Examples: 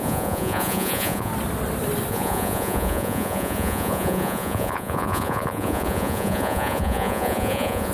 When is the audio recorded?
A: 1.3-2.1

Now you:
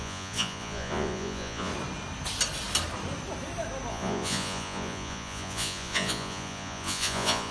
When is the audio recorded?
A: 1.7-3.9

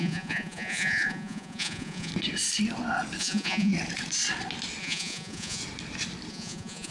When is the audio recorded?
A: 2.1-3.2; 3.7-4.8; 5.6-6.3

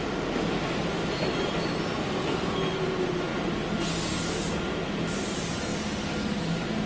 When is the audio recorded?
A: 0.0-6.9

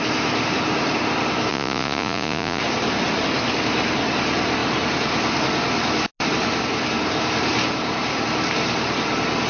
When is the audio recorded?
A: 0.0-1.5; 2.6-9.5